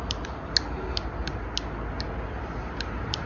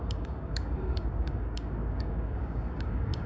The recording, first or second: first